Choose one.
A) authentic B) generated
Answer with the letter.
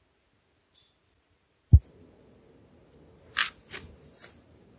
A